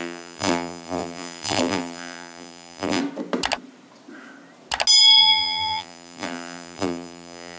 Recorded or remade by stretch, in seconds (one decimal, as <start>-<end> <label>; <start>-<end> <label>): 0.0-3.0 remade; 3.0-5.2 recorded; 5.2-7.6 remade